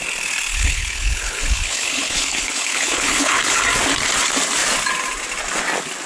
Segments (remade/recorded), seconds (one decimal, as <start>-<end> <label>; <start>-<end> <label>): 0.0-0.5 recorded; 0.5-3.6 remade; 3.6-6.1 recorded